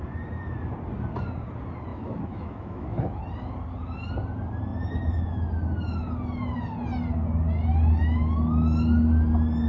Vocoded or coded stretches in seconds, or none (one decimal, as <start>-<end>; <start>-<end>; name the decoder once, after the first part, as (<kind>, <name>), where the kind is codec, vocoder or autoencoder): 1.9-3.2 (autoencoder, DAC-VAE)